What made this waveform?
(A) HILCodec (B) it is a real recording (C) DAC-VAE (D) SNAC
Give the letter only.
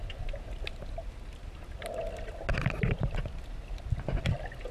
B